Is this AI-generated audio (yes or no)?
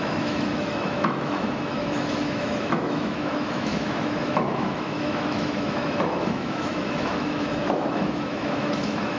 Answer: yes